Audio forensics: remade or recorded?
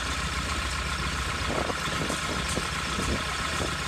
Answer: recorded